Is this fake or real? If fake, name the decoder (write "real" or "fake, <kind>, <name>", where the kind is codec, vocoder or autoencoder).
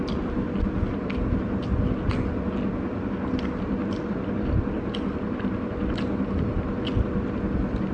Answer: real